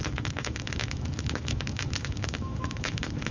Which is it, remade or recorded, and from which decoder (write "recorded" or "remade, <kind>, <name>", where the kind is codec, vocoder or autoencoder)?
remade, autoencoder, DAC-VAE